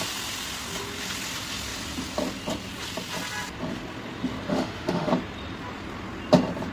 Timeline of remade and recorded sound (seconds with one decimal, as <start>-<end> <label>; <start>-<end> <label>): 0.0-4.5 recorded; 4.5-5.1 remade; 5.1-6.7 recorded